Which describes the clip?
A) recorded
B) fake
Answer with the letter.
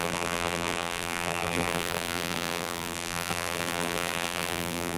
B